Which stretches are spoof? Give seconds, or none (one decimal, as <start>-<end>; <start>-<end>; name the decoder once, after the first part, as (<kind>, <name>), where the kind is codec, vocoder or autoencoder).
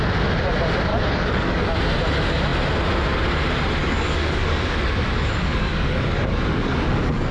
0.9-1.7 (codec, DAC); 3.8-7.3